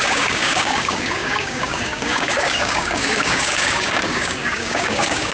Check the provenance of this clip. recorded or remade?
remade